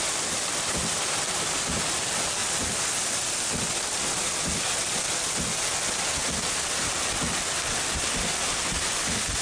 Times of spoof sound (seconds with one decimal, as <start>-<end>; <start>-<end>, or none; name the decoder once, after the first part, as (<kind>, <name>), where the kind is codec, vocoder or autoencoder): none